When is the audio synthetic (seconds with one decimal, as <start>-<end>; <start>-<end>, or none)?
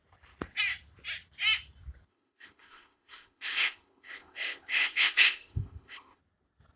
2.1-6.2